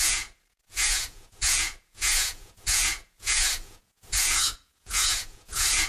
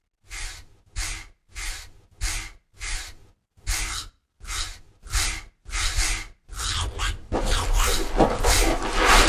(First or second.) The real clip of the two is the second